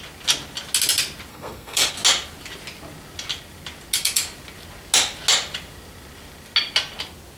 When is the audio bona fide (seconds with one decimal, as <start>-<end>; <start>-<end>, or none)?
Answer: 0.0-1.3; 1.9-7.4